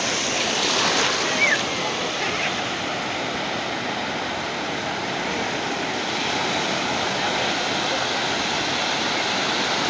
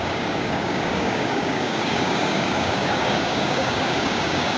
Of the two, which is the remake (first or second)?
second